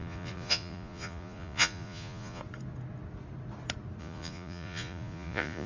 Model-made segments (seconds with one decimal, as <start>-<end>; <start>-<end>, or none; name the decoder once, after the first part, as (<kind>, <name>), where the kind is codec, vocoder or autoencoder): 0.0-2.4 (vocoder, Vocos); 4.0-5.7